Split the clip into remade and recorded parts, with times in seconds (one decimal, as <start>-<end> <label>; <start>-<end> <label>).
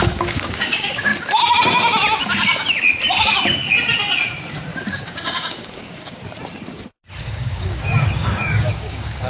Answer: 0.0-1.1 remade; 1.1-4.9 recorded; 4.9-6.2 remade; 6.2-7.2 recorded; 7.2-9.3 remade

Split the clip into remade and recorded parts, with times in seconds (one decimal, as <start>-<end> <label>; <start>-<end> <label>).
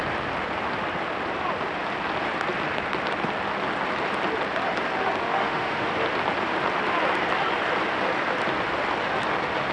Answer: 0.0-5.2 recorded; 5.2-5.9 remade; 5.9-9.7 recorded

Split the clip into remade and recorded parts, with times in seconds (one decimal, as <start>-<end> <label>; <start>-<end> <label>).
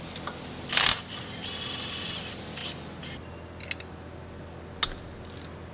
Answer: 0.0-5.7 recorded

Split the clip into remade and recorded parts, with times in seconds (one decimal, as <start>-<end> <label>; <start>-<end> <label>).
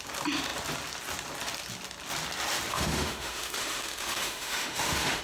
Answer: 0.0-2.7 recorded; 2.7-5.2 remade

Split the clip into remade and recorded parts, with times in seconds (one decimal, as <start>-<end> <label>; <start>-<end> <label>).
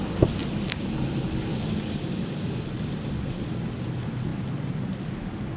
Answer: 0.0-5.6 recorded